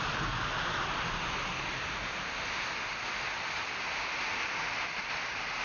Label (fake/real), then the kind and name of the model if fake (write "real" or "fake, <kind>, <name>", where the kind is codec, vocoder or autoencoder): real